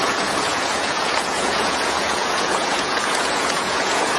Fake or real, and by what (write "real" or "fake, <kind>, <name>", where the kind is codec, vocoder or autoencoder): fake, vocoder, Vocos